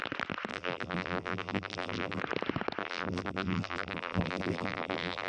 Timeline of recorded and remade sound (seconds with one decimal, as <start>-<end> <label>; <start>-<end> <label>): 0.0-0.5 recorded; 0.5-2.2 remade; 2.2-2.8 recorded; 2.8-5.3 remade